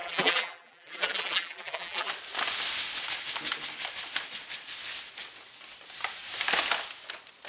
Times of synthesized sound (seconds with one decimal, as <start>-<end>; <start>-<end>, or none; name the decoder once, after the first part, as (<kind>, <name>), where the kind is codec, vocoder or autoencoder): 0.0-2.1 (vocoder, BigVGAN v2)